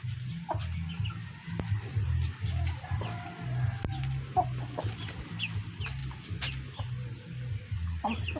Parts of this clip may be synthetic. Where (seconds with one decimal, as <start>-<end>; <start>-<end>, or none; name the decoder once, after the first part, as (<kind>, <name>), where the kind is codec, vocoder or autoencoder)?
none